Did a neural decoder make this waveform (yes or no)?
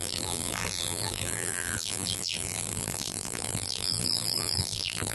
yes